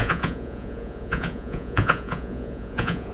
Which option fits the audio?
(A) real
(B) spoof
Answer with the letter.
B